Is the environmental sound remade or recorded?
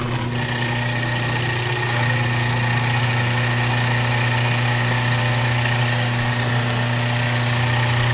recorded